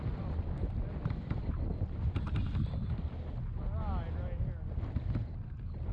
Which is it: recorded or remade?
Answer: recorded